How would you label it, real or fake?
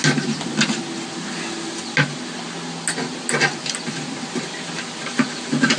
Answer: real